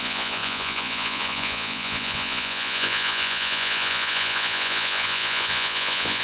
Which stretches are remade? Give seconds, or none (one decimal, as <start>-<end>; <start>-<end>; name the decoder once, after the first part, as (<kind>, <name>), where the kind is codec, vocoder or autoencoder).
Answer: 0.0-6.2 (vocoder, Vocos)